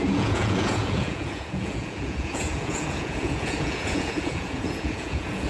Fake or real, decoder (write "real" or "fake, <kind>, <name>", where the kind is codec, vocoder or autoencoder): fake, vocoder, Vocos